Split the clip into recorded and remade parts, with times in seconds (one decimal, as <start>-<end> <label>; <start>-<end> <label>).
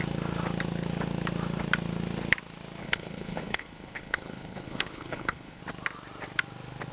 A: 0.0-2.8 recorded; 2.8-5.6 remade; 5.6-6.9 recorded